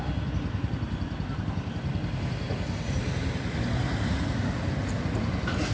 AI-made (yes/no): no